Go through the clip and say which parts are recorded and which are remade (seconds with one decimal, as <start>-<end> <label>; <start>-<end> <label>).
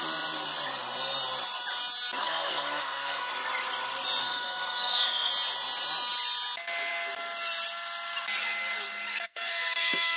0.0-2.2 recorded; 2.2-3.3 remade; 3.3-4.2 recorded; 4.2-5.3 remade; 5.3-9.1 recorded; 9.1-10.2 remade